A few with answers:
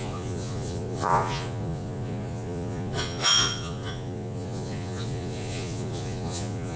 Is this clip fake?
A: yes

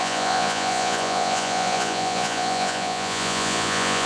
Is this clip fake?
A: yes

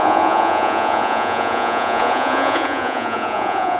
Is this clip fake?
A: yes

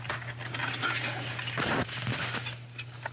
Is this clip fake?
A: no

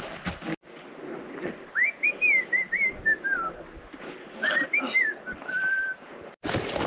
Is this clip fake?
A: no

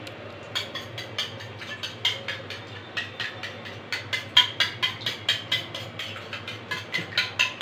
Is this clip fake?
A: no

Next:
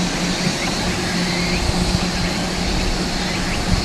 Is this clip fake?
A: no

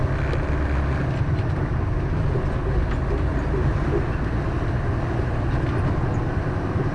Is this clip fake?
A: no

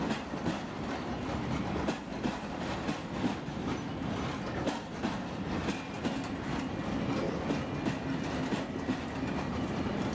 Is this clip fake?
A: no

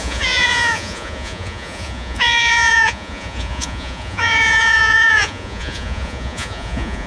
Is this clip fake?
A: yes